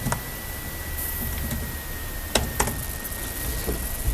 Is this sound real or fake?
real